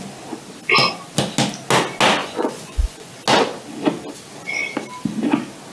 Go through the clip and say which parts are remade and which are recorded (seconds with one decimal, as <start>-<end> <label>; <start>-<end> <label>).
0.0-2.2 recorded; 2.2-3.1 remade; 3.1-5.7 recorded